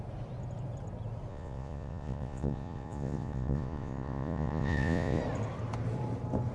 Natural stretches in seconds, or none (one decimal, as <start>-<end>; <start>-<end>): 0.0-1.3; 5.2-6.5